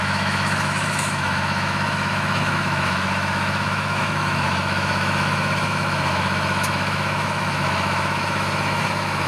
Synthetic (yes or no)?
yes